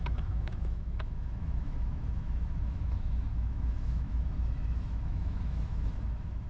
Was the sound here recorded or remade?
remade